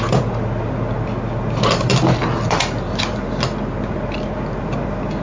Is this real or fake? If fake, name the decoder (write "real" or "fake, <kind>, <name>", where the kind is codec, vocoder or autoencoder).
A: real